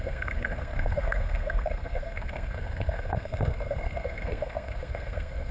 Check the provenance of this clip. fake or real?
fake